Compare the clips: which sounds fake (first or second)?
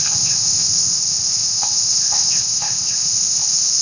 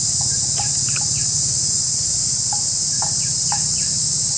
first